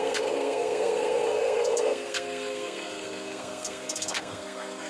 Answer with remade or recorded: remade